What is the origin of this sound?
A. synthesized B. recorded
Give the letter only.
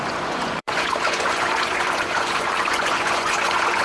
A